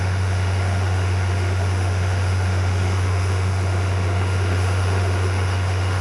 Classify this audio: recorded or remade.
remade